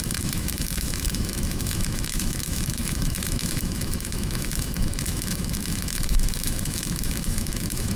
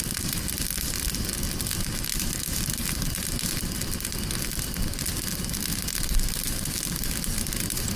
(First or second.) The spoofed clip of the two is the first